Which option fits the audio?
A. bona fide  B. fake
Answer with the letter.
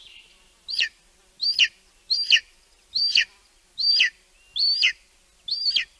A